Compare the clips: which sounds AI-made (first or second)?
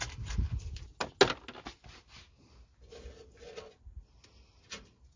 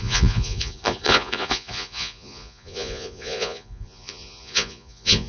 second